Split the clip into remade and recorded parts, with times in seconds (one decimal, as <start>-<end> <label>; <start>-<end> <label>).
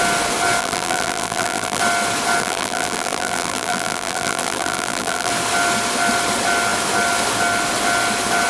0.0-0.6 recorded; 0.6-1.8 remade; 1.8-2.4 recorded; 2.4-5.3 remade; 5.3-8.5 recorded